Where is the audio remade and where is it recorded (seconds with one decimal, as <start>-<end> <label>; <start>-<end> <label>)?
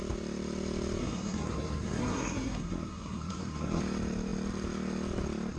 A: 0.0-1.0 recorded; 1.0-3.8 remade; 3.8-5.6 recorded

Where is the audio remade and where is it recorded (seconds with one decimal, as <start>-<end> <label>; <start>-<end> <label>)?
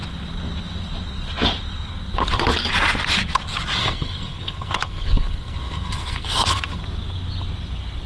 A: 0.0-3.8 recorded; 3.8-6.8 remade; 6.8-8.1 recorded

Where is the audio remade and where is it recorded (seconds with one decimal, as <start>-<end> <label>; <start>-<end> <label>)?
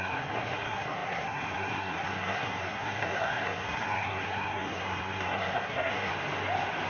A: 0.0-6.1 remade; 6.1-6.9 recorded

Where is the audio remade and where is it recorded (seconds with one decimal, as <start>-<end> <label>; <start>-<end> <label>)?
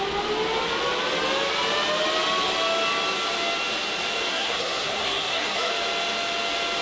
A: 0.0-4.3 recorded; 4.3-5.7 remade; 5.7-6.8 recorded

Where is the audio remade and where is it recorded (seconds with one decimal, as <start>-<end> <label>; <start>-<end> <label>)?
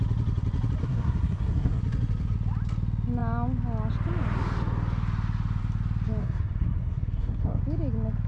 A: 0.0-0.8 recorded; 0.8-1.8 remade; 1.8-6.2 recorded; 6.2-7.6 remade; 7.6-8.3 recorded